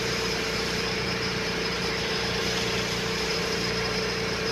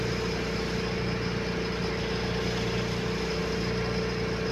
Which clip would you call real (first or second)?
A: second